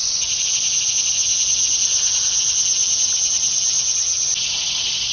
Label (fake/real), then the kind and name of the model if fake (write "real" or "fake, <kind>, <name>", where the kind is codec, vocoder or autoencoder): real